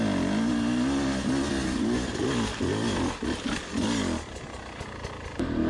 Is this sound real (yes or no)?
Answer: yes